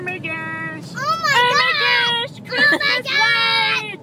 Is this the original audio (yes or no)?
yes